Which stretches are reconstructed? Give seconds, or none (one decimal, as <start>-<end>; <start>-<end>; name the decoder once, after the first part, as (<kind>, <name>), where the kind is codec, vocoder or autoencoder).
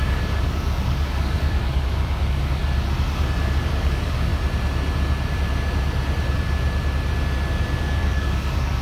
0.0-2.6 (codec, DAC); 3.6-4.3; 7.8-8.8